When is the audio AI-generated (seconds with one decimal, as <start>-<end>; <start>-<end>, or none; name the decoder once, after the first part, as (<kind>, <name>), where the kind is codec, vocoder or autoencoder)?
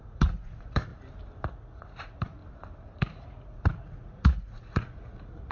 0.0-0.9 (vocoder, Vocos); 1.5-2.4; 3.0-5.5